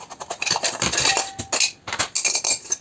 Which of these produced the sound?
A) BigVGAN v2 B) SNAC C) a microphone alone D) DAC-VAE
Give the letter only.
C